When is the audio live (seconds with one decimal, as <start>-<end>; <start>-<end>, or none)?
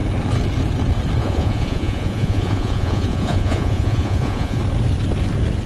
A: 0.0-1.2; 4.6-5.7